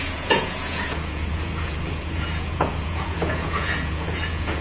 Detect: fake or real fake